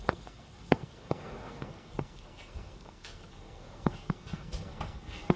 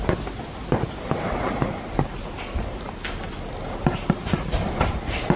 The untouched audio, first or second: second